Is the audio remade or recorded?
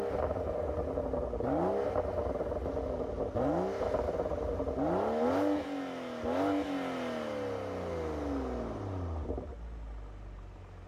recorded